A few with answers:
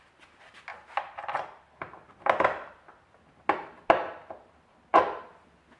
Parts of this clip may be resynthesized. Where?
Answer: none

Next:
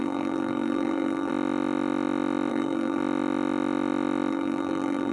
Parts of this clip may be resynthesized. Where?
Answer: 0.0-1.3 (codec, SNAC); 2.5-3.0; 4.3-5.1

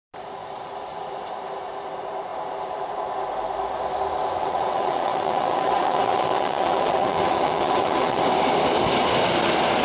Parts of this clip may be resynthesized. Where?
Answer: 4.4-8.2 (vocoder, WaveNeXt)